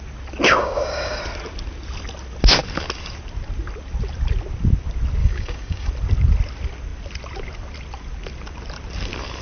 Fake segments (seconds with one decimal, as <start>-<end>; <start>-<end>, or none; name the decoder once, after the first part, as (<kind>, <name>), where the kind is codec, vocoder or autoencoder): 0.6-1.2 (codec, DAC); 5.2-5.9